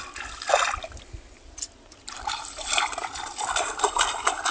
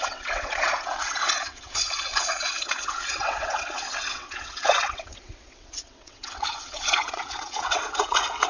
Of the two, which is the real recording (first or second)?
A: first